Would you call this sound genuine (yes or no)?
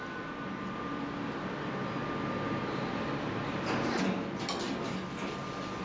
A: yes